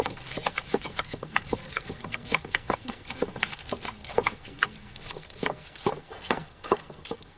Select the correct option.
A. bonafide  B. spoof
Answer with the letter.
B